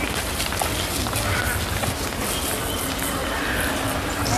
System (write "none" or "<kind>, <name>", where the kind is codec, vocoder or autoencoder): none